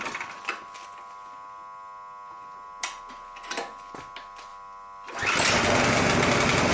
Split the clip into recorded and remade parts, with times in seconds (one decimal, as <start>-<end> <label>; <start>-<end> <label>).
0.0-6.7 recorded